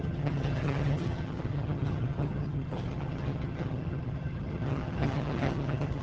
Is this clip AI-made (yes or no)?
yes